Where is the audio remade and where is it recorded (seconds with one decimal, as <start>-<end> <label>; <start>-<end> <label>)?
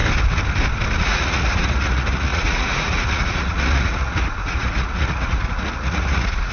0.0-1.0 recorded; 1.0-6.5 remade